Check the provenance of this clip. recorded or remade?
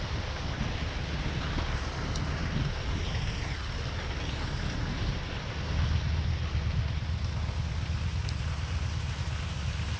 recorded